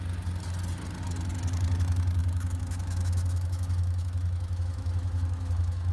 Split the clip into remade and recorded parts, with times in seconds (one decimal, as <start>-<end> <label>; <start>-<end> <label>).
0.0-2.2 recorded; 2.2-5.9 remade